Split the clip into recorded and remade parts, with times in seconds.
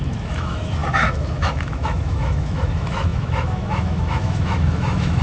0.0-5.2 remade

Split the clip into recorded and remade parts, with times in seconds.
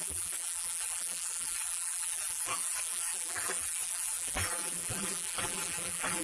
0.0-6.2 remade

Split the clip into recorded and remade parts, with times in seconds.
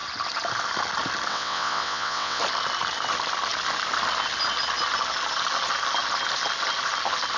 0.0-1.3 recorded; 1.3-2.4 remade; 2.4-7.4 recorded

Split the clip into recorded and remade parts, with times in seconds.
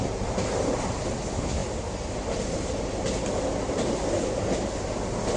0.0-5.4 recorded